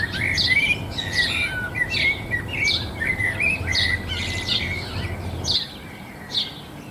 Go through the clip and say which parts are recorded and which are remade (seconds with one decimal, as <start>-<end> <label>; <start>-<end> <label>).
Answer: 0.0-6.9 recorded